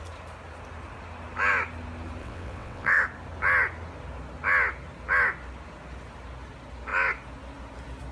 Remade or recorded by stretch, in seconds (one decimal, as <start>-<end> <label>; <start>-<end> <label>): 0.0-2.2 recorded; 2.2-3.0 remade; 3.0-8.1 recorded